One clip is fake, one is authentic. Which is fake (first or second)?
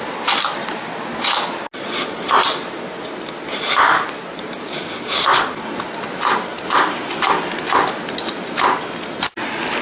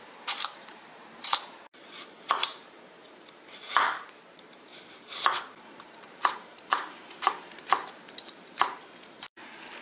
second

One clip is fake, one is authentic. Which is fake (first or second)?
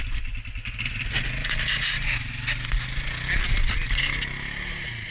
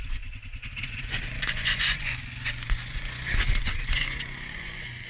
second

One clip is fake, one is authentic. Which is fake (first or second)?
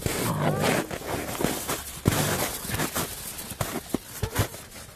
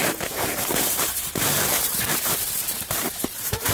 second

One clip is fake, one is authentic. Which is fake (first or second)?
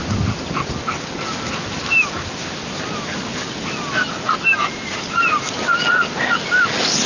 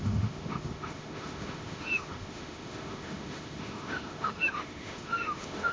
second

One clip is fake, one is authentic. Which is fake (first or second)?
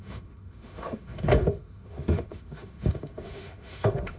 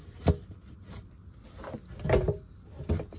first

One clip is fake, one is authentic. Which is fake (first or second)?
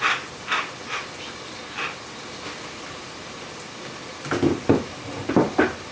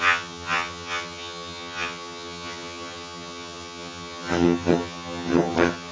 second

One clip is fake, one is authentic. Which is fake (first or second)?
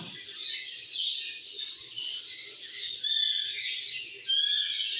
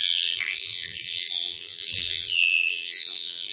second